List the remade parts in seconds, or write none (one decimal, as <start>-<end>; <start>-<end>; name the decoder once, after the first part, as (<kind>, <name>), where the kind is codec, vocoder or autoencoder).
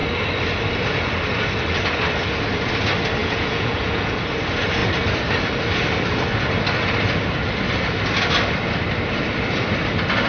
3.2-4.2 (vocoder, Vocos)